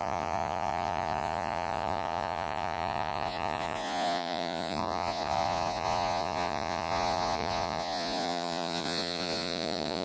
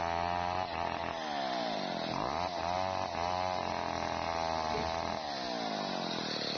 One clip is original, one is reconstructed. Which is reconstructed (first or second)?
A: first